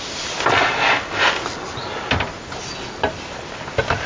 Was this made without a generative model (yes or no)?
yes